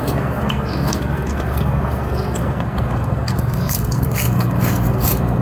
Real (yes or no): no